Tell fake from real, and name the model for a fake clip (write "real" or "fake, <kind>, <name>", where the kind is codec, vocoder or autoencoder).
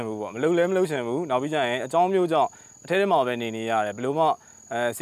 real